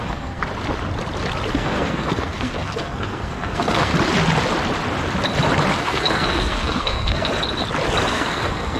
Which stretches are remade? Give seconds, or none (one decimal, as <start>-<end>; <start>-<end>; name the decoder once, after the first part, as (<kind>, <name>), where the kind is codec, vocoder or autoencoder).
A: 0.0-0.4 (codec, SNAC); 1.5-3.9; 5.8-7.3; 8.1-8.8